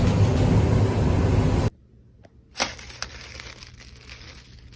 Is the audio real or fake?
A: real